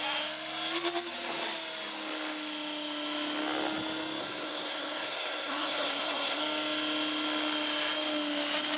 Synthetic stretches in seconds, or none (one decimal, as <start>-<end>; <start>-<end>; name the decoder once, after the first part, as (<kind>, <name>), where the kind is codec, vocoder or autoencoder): 4.2-6.4 (codec, SNAC)